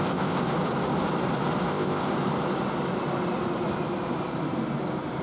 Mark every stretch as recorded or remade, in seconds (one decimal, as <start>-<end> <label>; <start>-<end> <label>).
0.0-0.4 remade; 0.4-1.7 recorded; 1.7-2.1 remade; 2.1-5.2 recorded